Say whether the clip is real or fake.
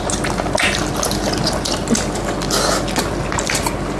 real